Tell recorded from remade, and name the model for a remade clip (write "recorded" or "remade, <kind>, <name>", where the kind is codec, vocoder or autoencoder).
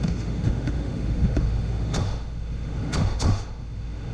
remade, autoencoder, DAC-VAE